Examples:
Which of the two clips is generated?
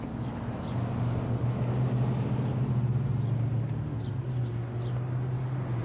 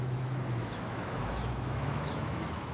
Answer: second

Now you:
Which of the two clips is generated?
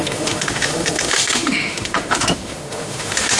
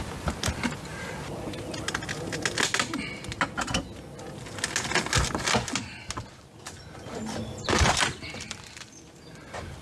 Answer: first